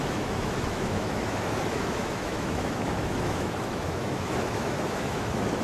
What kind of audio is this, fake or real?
fake